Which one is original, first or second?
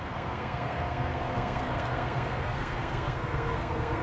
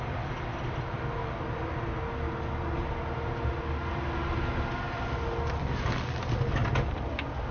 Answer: second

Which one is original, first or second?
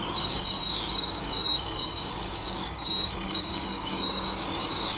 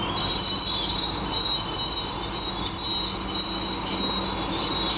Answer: second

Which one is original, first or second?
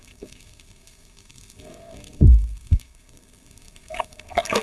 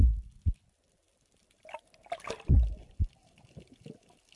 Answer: second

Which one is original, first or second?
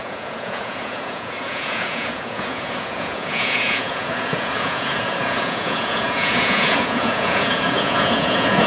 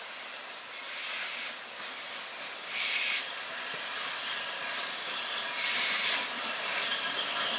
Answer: second